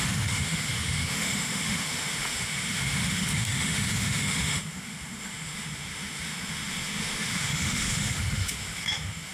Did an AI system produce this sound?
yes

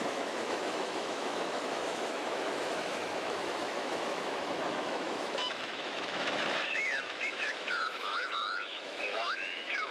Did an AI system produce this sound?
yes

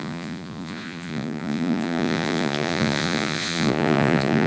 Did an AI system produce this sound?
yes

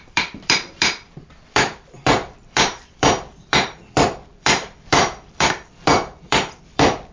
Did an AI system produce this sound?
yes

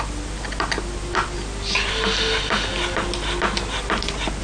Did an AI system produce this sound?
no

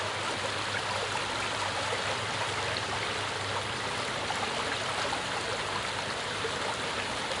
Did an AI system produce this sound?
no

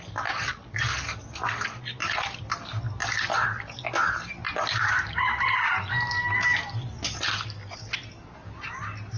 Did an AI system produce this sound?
no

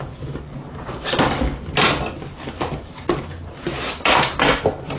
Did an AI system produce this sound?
no